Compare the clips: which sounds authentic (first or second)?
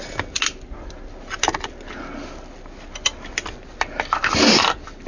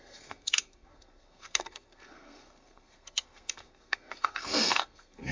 first